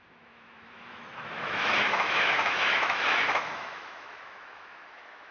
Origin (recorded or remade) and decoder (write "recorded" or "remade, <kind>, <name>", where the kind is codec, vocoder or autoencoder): remade, autoencoder, DAC-VAE